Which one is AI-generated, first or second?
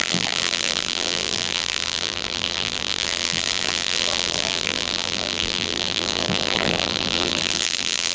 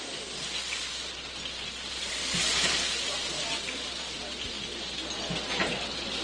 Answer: first